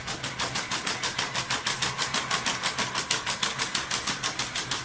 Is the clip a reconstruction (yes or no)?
no